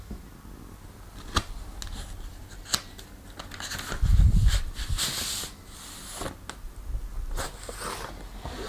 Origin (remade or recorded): recorded